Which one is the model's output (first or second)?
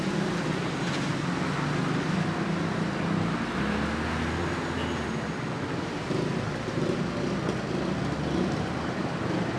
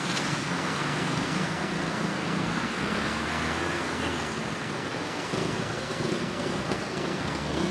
second